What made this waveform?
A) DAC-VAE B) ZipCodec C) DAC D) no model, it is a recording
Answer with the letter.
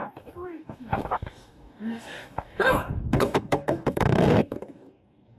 C